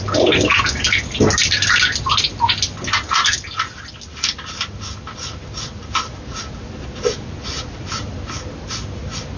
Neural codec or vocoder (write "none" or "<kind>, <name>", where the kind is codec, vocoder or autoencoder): none